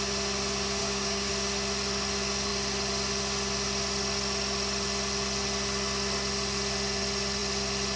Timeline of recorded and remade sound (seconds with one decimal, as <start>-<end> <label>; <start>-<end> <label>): 0.0-0.8 recorded; 0.8-1.3 remade; 1.3-8.0 recorded